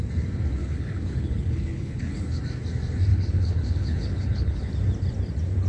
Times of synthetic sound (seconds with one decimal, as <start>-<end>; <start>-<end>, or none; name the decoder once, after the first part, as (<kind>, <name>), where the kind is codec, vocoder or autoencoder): 0.6-2.4 (codec, HILCodec); 3.1-4.7